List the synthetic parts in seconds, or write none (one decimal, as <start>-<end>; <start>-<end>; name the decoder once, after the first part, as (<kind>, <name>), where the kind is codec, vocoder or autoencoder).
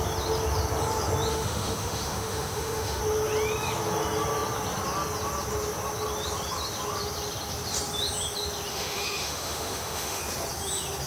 1.3-3.0 (autoencoder, DAC-VAE); 8.7-10.2